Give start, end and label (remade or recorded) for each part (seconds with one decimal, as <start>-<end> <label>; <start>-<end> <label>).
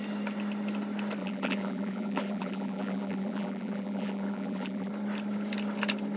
0.0-1.2 recorded; 1.2-4.9 remade; 4.9-6.2 recorded